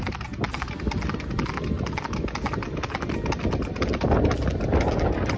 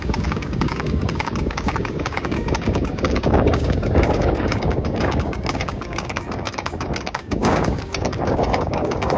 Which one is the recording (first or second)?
first